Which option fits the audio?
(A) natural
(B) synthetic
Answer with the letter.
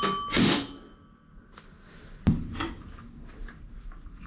A